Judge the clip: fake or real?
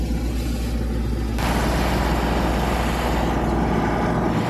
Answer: real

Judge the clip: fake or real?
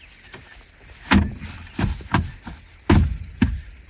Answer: real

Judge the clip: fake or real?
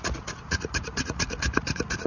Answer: fake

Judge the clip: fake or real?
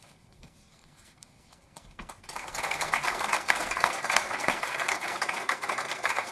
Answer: fake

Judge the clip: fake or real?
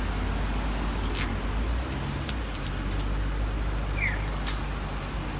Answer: real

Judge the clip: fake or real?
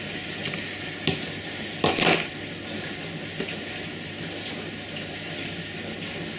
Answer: real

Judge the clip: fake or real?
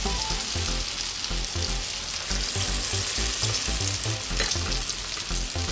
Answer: real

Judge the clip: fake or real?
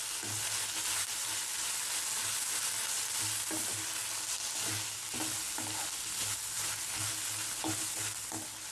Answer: real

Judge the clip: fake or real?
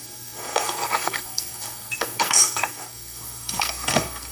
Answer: fake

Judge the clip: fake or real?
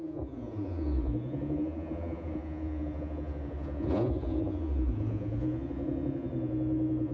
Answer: fake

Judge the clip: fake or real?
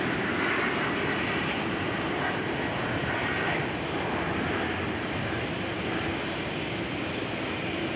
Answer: real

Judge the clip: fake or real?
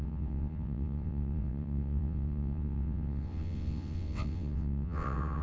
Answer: fake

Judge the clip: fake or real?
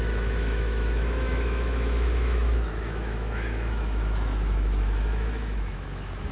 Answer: fake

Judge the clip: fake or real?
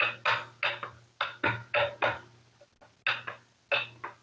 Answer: real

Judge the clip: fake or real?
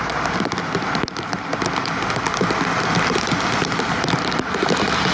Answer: real